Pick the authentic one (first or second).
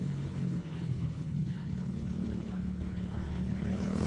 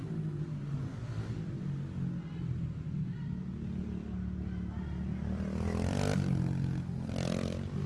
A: second